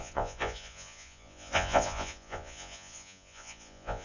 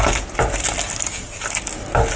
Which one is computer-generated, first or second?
first